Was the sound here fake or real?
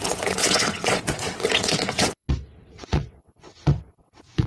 fake